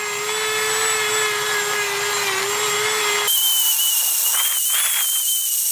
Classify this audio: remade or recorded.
recorded